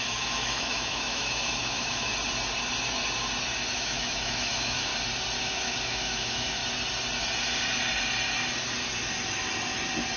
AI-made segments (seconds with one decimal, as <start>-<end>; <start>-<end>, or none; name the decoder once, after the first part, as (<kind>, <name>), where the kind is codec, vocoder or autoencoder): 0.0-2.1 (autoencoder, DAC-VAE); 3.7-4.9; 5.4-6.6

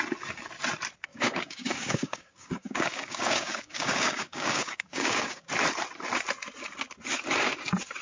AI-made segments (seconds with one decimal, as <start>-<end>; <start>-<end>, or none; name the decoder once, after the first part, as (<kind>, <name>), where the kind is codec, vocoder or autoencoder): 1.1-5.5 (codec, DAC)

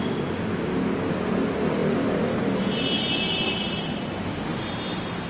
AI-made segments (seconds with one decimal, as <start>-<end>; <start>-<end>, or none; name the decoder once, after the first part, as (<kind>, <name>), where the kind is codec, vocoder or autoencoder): none